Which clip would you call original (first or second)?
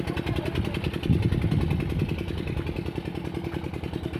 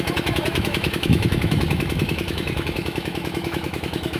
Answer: first